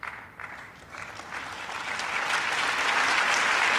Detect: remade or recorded recorded